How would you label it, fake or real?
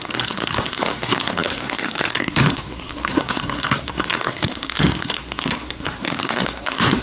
fake